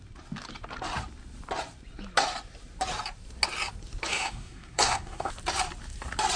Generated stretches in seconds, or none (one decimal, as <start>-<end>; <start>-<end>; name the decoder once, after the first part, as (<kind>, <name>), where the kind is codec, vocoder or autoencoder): 4.1-5.3 (codec, SNAC)